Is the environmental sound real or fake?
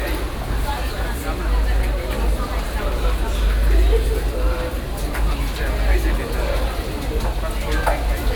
real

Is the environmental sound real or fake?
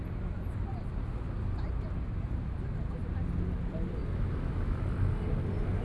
real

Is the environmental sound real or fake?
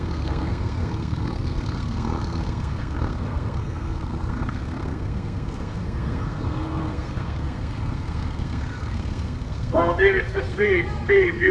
fake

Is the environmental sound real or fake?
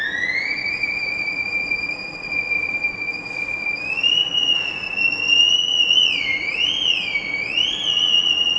fake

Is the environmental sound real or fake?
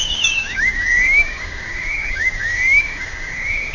fake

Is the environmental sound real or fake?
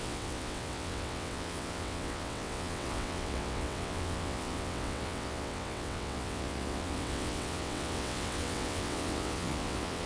fake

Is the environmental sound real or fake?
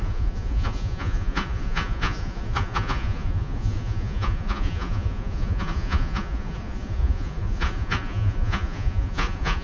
fake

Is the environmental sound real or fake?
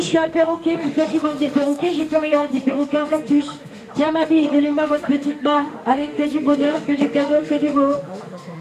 fake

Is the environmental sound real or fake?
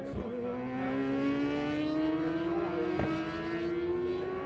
real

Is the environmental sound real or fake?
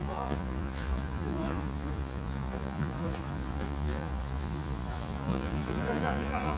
fake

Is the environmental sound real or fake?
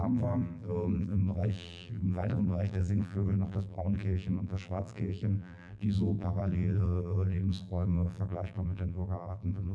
fake